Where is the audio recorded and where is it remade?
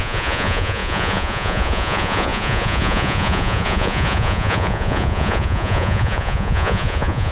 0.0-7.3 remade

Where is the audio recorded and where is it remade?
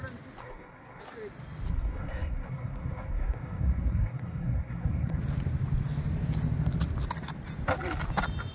0.0-0.4 recorded; 0.4-1.0 remade; 1.0-1.7 recorded; 1.7-5.2 remade; 5.2-8.5 recorded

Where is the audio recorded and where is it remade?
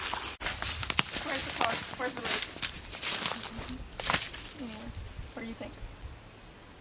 0.0-6.8 recorded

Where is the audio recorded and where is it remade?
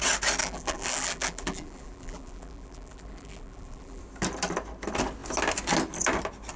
0.0-0.4 recorded; 0.4-4.0 remade; 4.0-6.6 recorded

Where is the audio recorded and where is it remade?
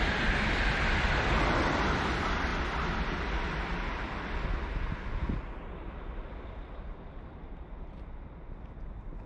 0.0-9.3 recorded